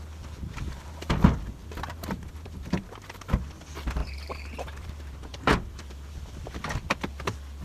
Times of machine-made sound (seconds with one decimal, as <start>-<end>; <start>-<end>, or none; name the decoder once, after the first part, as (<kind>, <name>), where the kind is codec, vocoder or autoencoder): 1.6-3.3 (vocoder, BigVGAN v2); 4.0-6.2